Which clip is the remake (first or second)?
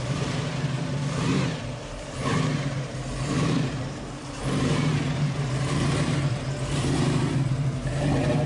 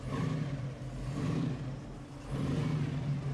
first